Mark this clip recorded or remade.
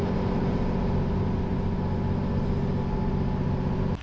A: recorded